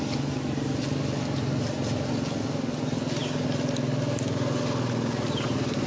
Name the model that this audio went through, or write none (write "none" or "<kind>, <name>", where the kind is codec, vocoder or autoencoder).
none